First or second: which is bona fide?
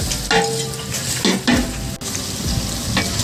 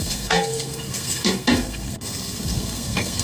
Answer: first